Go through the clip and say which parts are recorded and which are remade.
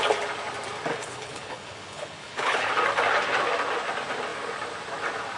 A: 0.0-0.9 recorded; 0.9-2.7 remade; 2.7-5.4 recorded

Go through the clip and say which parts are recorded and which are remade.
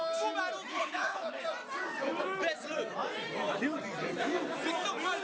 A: 0.0-0.7 recorded; 0.7-1.4 remade; 1.4-5.2 recorded